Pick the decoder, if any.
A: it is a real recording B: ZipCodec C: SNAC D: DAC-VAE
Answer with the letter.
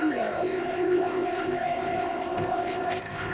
B